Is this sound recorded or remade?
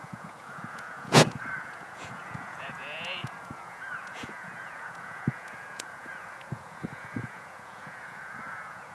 remade